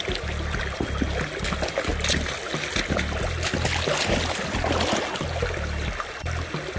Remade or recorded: recorded